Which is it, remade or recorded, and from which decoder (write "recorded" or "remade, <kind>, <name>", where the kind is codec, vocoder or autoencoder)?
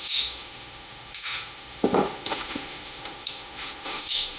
remade, autoencoder, DAC-VAE